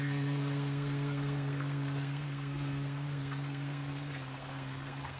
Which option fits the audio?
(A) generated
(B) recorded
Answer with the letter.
A